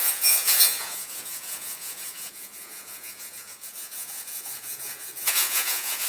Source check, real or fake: fake